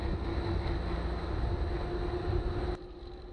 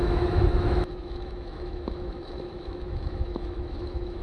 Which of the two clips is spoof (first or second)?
second